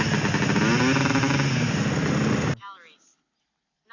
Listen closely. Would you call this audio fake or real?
real